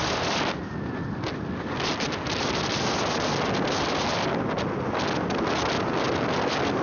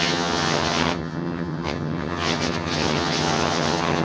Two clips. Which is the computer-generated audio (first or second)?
second